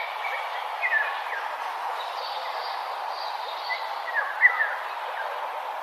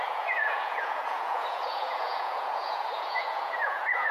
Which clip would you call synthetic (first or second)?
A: second